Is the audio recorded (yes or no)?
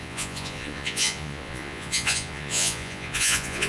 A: no